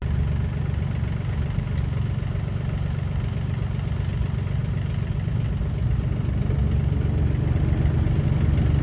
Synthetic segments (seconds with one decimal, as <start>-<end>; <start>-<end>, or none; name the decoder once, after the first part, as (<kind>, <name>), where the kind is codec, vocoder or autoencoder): none